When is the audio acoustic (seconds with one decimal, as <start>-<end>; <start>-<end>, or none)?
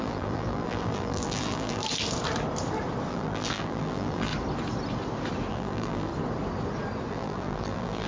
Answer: 1.8-3.1; 4.3-5.5; 6.1-7.1